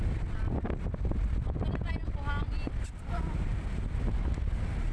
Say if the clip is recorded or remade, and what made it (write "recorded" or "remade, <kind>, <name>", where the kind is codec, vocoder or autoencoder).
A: recorded